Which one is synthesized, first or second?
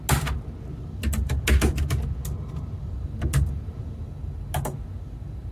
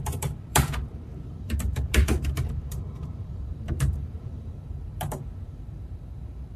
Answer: second